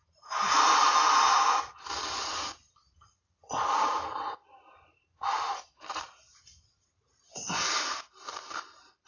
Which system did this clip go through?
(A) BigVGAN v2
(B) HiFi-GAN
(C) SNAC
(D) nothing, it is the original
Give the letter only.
A